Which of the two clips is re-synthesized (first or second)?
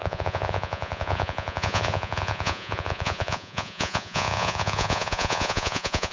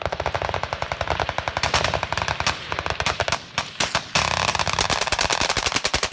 first